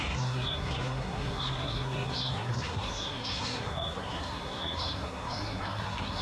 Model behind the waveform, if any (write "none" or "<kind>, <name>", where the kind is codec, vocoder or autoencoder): codec, SNAC